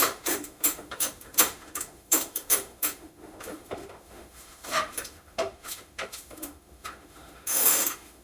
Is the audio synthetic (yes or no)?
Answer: yes